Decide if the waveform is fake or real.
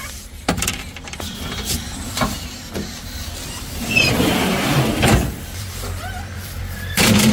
fake